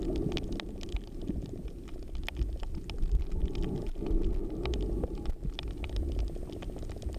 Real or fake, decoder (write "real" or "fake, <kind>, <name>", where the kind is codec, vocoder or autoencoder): real